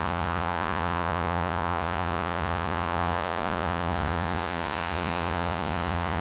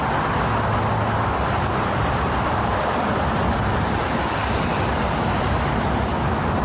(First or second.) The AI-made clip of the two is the first